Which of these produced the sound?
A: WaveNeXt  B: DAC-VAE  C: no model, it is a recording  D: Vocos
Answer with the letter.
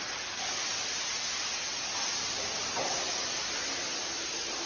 C